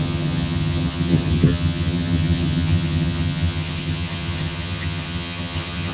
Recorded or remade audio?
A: remade